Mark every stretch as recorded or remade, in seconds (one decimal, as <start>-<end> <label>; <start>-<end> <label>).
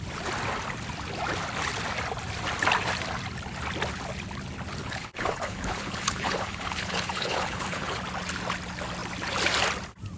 0.0-4.8 recorded; 4.8-8.0 remade; 8.0-10.2 recorded